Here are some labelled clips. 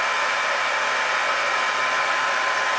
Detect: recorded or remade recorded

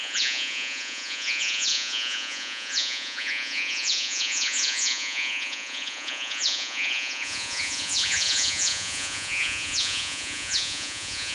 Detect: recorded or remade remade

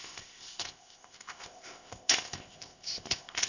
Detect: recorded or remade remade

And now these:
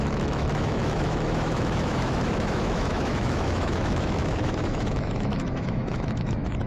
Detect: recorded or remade remade